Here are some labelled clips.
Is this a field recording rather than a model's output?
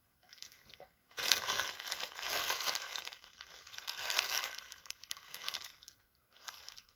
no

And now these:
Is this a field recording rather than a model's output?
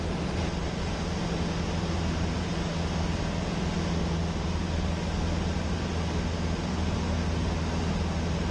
yes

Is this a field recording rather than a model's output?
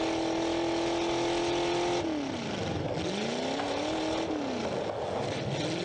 yes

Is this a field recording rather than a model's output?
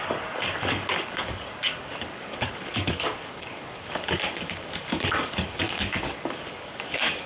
no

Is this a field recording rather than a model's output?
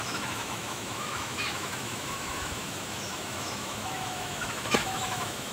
no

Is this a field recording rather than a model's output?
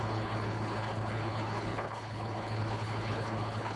no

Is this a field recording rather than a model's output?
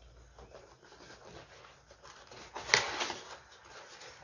yes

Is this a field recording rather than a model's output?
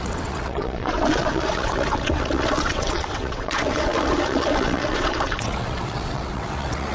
no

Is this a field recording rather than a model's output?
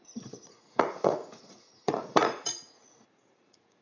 no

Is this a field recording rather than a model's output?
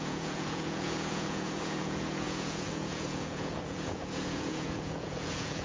no